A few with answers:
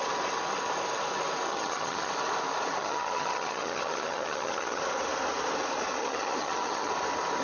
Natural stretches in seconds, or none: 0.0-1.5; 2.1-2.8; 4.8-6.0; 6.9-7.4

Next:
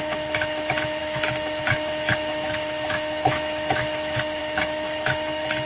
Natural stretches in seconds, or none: none

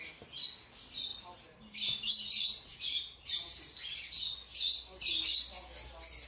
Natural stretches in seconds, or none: 0.0-1.1; 2.1-2.7; 3.7-6.3

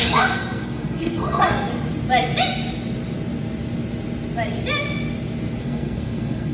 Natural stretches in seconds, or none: 1.7-5.6

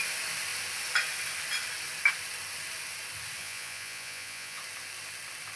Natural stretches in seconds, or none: 0.0-3.4; 4.6-5.6